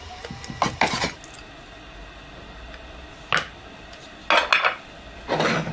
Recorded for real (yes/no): yes